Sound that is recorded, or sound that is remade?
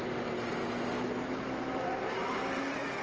recorded